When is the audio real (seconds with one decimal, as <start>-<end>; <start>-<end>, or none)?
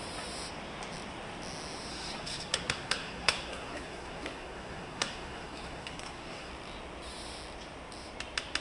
0.0-1.9; 6.5-8.6